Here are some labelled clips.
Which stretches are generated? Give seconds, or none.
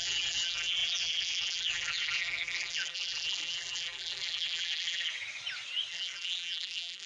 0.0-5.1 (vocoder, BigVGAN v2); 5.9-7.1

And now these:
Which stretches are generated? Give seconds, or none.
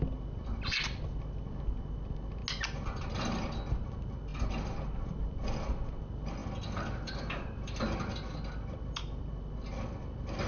none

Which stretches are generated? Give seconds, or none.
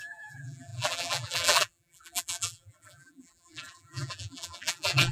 0.0-5.1 (vocoder, BigVGAN v2)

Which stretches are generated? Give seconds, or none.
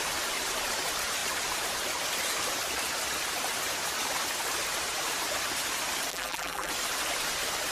6.1-6.7 (vocoder, BigVGAN v2)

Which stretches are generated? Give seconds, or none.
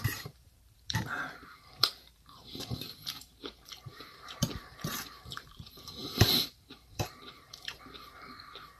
0.0-8.8 (vocoder, BigVGAN v2)